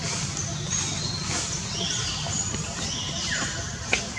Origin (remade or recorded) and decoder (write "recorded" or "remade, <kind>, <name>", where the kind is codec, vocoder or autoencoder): recorded